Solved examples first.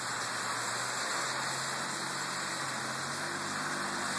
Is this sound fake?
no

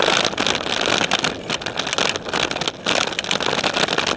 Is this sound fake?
no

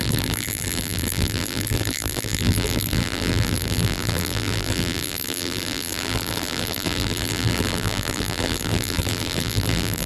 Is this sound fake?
yes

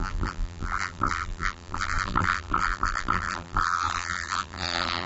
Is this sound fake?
yes